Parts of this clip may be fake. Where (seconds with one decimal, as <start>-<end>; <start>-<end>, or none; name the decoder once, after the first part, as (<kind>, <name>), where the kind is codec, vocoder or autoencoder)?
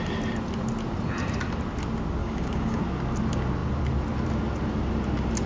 2.2-2.8 (codec, DAC)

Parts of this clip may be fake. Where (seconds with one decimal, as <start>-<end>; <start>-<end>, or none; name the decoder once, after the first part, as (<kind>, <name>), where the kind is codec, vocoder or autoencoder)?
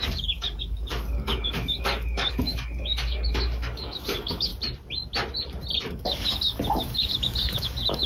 0.0-4.5 (codec, DAC); 5.9-8.1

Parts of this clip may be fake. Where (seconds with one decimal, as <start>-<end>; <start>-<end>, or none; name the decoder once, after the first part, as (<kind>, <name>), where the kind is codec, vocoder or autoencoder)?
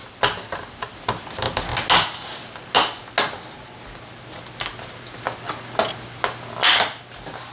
none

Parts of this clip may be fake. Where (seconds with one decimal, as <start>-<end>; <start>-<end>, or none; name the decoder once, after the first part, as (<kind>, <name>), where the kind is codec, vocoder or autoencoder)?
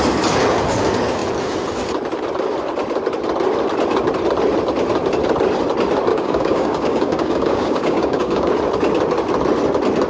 6.1-8.5 (codec, DAC)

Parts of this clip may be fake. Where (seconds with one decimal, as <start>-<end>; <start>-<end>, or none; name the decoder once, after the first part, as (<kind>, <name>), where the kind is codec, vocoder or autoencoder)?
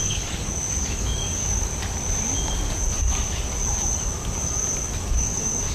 0.0-1.7 (codec, DAC); 5.1-5.7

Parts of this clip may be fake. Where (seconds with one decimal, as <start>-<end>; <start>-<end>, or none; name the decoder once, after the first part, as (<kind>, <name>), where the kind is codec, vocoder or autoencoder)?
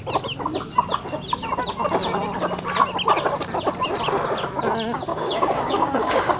5.1-6.4 (codec, DAC)